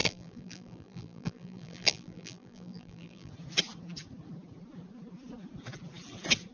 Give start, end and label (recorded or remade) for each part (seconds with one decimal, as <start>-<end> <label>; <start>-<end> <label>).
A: 0.0-3.3 remade; 3.3-6.5 recorded